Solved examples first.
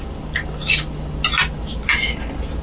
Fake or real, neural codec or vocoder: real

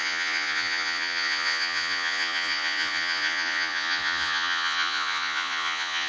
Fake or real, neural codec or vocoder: fake, vocoder, Vocos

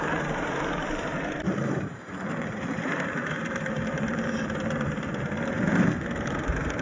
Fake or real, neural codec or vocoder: fake, vocoder, BigVGAN v2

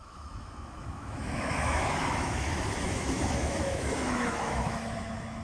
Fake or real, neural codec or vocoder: fake, autoencoder, DAC-VAE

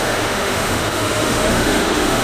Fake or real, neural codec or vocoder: fake, autoencoder, DAC-VAE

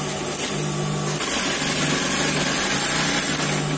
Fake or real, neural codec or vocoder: real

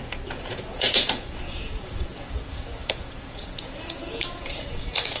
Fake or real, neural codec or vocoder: fake, vocoder, Vocos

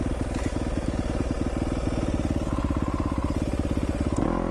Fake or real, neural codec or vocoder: real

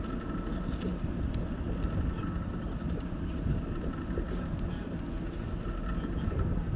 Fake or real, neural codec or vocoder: real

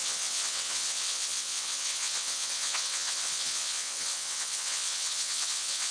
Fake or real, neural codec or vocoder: fake, vocoder, WaveNeXt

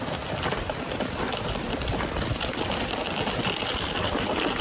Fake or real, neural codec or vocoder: real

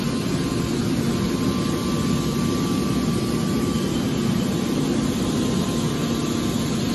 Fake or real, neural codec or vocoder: real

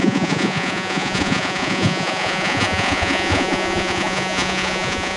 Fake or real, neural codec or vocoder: fake, vocoder, Vocos